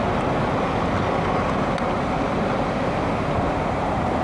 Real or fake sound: real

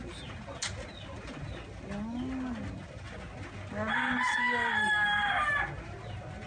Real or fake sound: real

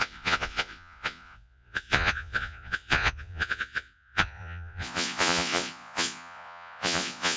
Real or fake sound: fake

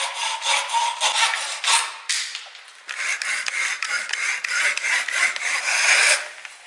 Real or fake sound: real